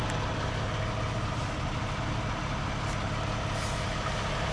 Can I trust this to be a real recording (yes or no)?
yes